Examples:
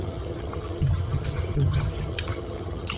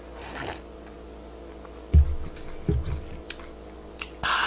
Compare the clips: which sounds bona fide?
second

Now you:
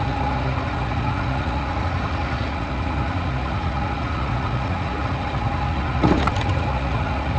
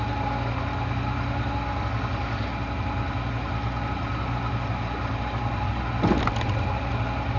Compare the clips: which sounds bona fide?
second